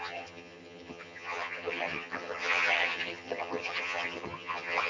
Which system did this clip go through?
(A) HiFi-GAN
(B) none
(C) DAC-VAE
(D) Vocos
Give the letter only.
A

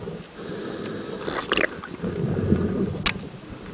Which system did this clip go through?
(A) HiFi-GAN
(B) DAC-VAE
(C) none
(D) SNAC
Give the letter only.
C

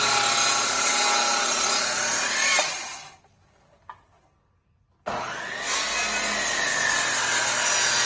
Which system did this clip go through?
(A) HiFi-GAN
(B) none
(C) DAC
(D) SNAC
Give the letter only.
B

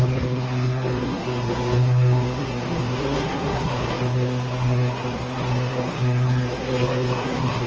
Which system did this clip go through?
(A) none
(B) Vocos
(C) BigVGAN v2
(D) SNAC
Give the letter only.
D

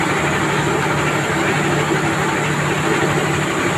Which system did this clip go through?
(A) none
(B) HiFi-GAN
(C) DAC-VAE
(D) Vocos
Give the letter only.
A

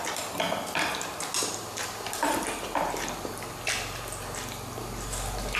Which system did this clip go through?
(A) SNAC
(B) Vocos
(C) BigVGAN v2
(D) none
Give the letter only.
D